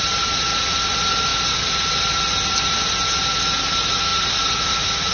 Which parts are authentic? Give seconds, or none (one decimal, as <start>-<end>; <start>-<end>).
0.0-5.1

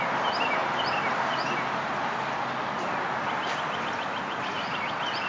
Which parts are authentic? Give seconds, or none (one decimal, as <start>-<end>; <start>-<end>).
0.0-5.3

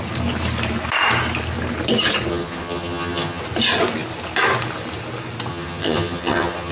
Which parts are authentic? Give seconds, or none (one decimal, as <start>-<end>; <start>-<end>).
0.0-2.3; 3.4-5.5

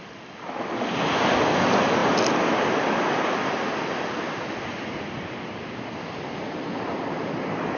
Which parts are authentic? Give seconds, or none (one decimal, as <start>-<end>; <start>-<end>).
0.0-7.8

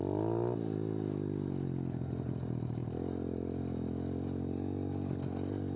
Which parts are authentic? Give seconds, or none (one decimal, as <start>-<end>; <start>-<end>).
0.0-5.8

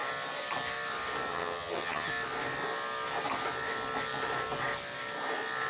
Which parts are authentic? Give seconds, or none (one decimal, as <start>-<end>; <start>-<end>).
0.0-1.3; 2.1-5.7